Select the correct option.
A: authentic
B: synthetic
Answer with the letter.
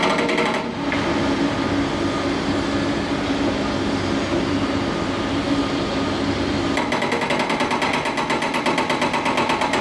A